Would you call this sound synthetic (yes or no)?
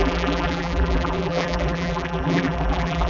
yes